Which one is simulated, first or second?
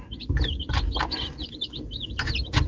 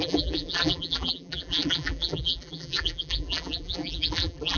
second